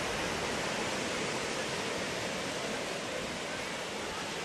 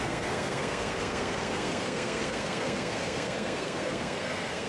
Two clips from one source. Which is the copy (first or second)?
second